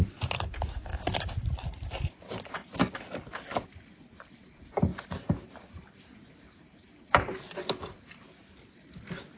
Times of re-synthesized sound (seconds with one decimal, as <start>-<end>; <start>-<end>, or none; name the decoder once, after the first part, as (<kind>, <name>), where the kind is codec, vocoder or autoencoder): 0.9-3.1 (vocoder, BigVGAN v2); 4.9-7.4